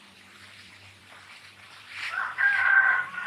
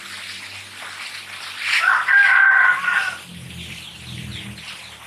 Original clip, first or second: second